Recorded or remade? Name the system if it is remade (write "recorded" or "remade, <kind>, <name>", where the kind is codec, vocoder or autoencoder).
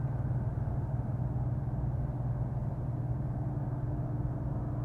recorded